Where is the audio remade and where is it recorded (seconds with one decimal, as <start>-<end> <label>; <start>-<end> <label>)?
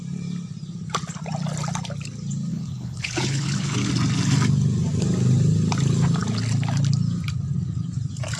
0.0-2.5 recorded; 2.5-3.9 remade; 3.9-8.4 recorded